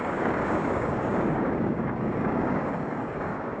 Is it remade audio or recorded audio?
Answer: remade